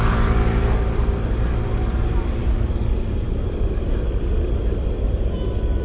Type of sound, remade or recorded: recorded